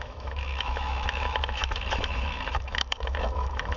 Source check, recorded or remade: remade